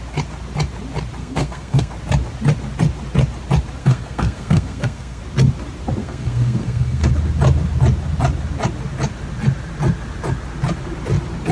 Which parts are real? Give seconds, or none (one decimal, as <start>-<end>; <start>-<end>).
0.0-1.2; 1.9-3.8; 5.2-6.0; 7.1-11.5